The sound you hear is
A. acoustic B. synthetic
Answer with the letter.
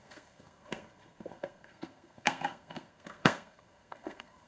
B